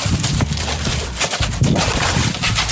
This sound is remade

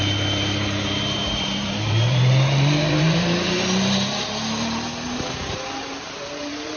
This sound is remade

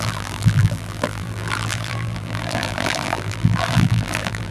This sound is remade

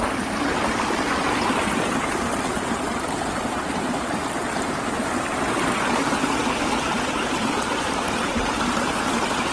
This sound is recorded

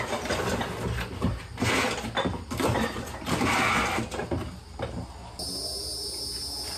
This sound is recorded